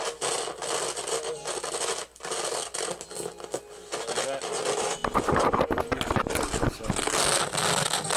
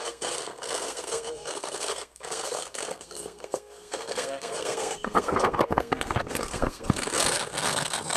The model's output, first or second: second